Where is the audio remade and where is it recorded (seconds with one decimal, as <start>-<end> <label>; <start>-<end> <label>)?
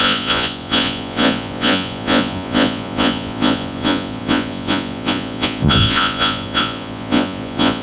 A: 0.0-7.8 remade